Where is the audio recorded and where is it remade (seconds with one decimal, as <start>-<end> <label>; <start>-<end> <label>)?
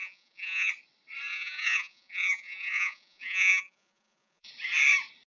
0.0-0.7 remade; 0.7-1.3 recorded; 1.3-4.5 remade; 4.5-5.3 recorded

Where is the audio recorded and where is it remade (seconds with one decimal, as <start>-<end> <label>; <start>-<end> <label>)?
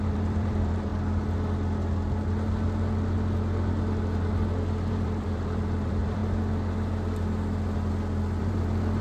0.0-0.9 remade; 0.9-4.9 recorded; 4.9-6.2 remade; 6.2-8.4 recorded; 8.4-9.0 remade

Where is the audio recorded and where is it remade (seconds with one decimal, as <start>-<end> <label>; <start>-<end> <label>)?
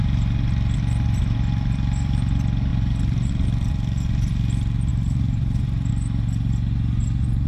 0.0-2.7 recorded; 2.7-3.3 remade; 3.3-4.9 recorded; 4.9-5.9 remade; 5.9-7.5 recorded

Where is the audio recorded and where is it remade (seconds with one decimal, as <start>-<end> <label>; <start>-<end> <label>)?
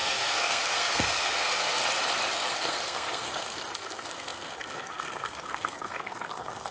0.0-1.8 remade; 1.8-2.5 recorded; 2.5-6.7 remade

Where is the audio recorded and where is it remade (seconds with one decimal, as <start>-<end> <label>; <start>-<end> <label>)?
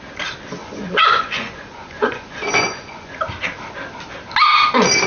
0.0-0.6 recorded; 0.6-3.2 remade; 3.2-5.1 recorded